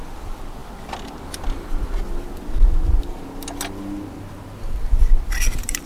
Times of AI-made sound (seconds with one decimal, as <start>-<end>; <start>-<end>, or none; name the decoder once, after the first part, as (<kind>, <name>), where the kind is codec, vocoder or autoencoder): none